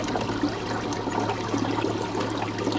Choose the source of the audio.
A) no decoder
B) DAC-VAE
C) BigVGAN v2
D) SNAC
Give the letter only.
A